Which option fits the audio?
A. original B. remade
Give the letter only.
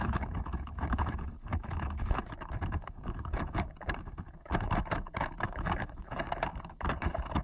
B